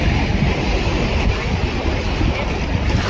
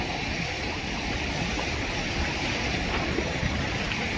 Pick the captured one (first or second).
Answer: first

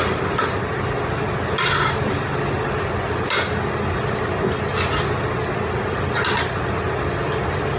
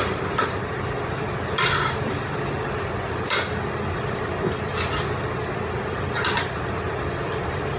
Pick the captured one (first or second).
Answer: first